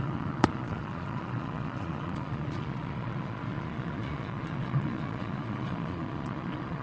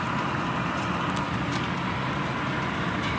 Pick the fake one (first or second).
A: first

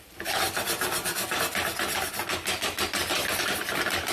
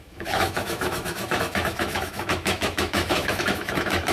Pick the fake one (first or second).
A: second